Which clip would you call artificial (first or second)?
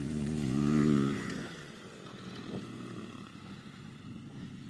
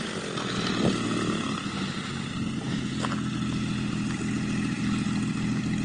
first